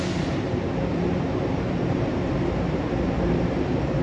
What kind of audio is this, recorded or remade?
remade